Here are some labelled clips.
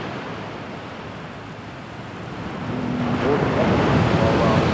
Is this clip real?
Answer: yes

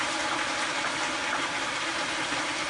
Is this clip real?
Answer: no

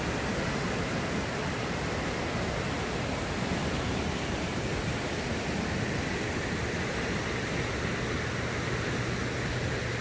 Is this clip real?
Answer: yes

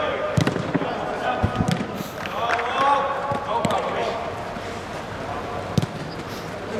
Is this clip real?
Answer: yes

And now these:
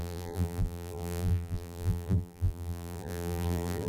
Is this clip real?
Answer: no